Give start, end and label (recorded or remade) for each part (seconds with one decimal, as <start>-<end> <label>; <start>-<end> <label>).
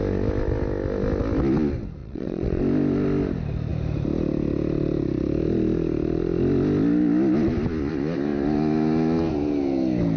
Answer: 0.0-2.0 recorded; 2.0-2.6 remade; 2.6-10.2 recorded